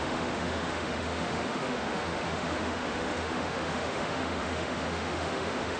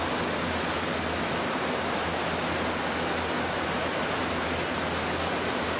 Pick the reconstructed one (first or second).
first